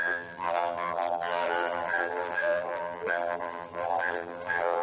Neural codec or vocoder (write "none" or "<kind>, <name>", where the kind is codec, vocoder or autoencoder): vocoder, BigVGAN v2